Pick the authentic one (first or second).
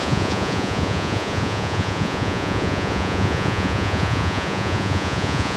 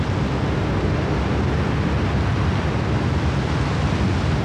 second